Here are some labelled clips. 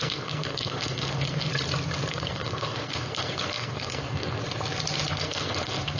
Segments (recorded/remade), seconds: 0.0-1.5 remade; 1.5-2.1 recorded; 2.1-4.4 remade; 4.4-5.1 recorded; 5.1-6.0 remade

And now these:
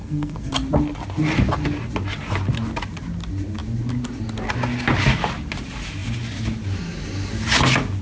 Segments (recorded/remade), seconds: 0.0-0.5 remade; 0.5-8.0 recorded

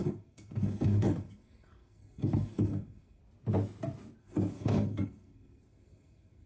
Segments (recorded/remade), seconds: 0.0-3.2 remade; 3.2-4.2 recorded; 4.2-6.5 remade